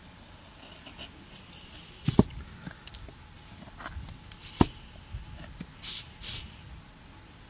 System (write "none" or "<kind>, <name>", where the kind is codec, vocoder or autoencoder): none